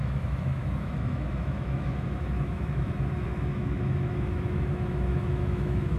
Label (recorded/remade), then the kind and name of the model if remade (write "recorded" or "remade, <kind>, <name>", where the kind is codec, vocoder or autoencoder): remade, autoencoder, DAC-VAE